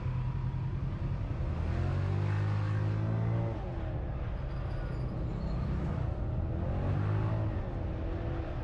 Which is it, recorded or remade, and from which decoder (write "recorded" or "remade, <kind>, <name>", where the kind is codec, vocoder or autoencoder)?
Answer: recorded